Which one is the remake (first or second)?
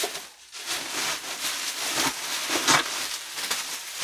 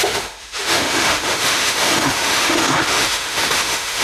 second